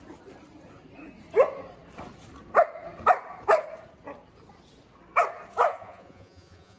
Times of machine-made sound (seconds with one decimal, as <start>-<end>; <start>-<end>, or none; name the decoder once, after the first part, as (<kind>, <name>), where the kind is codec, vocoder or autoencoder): 5.7-6.8 (vocoder, Vocos)